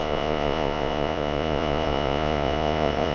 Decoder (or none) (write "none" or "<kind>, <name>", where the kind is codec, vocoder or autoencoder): vocoder, Vocos